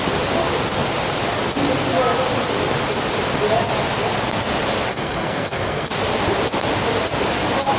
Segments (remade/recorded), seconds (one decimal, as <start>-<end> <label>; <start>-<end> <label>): 0.0-4.9 recorded; 4.9-5.9 remade; 5.9-7.8 recorded